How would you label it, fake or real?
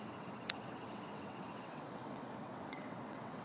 fake